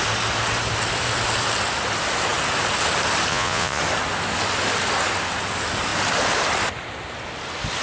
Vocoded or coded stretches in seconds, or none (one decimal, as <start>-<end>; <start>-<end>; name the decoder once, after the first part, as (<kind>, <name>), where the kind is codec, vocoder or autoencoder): 3.3-3.8 (vocoder, Vocos)